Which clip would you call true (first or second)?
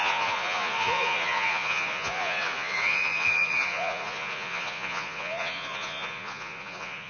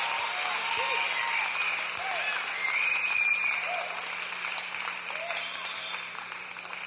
second